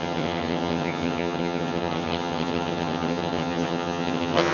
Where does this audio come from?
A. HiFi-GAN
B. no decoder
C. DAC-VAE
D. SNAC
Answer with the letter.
A